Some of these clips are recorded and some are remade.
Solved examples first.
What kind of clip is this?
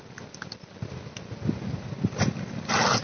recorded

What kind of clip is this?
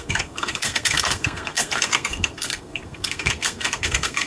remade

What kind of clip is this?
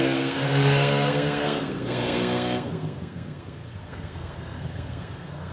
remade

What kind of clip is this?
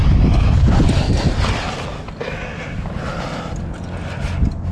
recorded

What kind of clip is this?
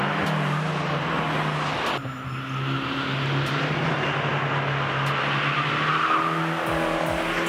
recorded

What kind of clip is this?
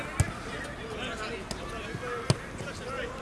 recorded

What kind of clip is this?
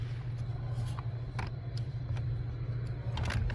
recorded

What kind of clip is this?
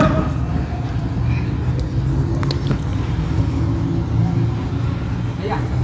recorded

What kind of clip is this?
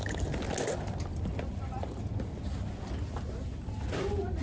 recorded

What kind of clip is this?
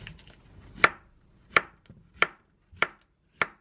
recorded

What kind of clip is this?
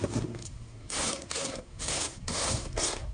remade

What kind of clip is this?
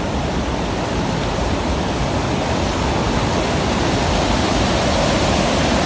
recorded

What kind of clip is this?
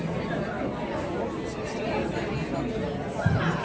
recorded